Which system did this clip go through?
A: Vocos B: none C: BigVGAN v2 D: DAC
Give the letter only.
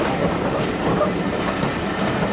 C